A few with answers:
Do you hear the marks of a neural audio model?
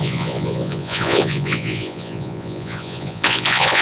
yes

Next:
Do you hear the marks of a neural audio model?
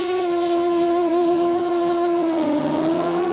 yes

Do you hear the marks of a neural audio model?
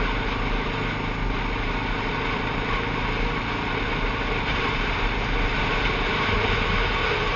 no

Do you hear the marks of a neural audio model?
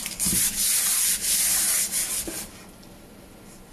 no